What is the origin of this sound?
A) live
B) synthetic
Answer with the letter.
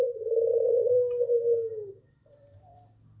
A